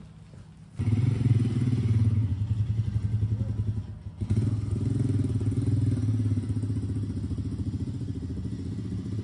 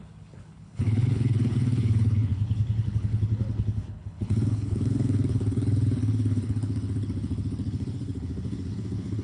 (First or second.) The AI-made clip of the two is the second